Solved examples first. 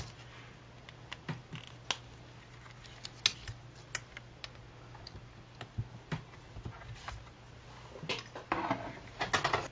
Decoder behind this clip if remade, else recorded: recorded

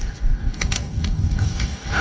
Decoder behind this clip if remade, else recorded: remade, codec, DAC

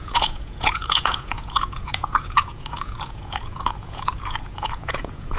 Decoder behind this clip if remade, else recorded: remade, vocoder, Vocos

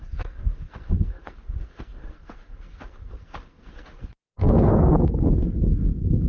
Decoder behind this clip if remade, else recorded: remade, codec, SNAC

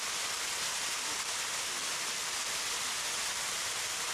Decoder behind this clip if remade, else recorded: recorded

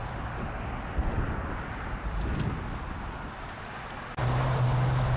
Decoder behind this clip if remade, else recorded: recorded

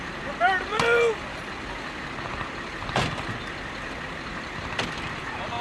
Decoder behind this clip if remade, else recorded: recorded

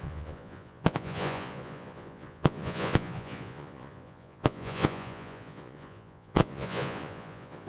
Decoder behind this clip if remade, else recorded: remade, vocoder, Vocos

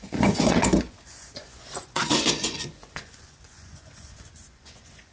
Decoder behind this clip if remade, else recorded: remade, vocoder, Vocos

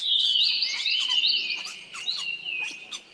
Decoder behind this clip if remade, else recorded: recorded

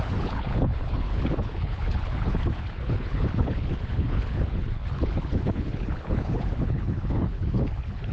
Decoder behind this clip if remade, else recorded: remade, codec, HILCodec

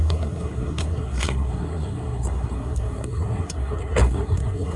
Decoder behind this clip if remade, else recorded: remade, codec, SNAC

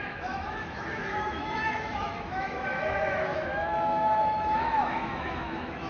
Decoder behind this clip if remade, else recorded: remade, autoencoder, DAC-VAE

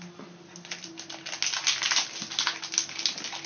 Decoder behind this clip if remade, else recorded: recorded